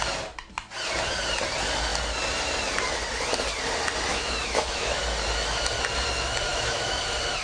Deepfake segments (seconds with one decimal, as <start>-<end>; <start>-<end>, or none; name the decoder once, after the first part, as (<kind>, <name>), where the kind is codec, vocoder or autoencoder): 4.1-5.0 (autoencoder, DAC-VAE); 6.5-7.0